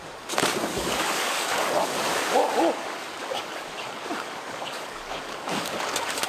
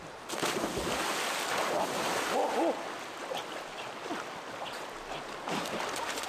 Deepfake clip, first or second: first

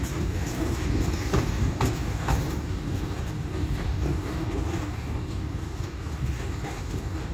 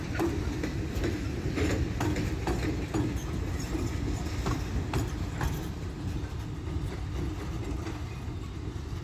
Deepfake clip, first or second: first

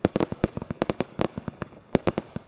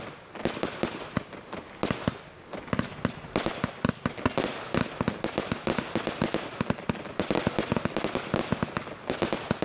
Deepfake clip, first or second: first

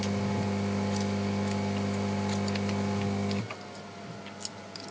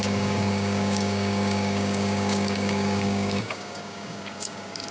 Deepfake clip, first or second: second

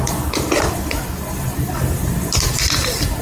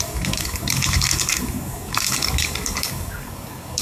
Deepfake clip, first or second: second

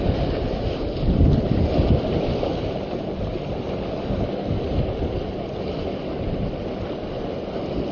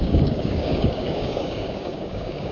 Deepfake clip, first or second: second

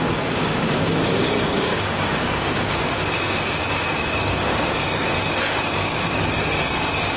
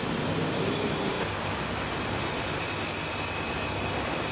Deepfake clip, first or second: first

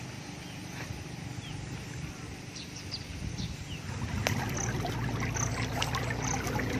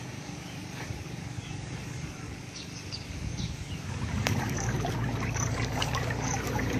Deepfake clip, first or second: second